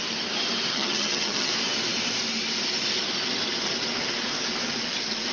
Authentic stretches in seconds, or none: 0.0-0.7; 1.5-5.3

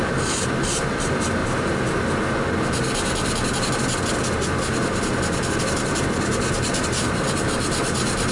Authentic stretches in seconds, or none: 1.4-5.5

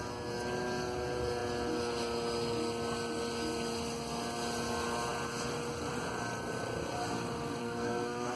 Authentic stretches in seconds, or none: 0.0-7.6